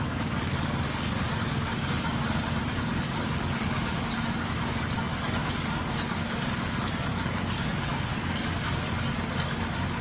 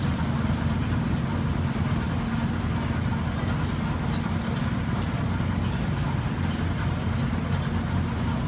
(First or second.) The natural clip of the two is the second